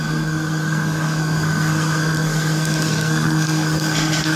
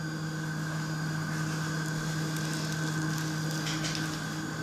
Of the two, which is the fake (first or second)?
first